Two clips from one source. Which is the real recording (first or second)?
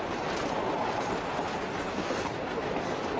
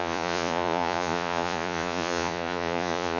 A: first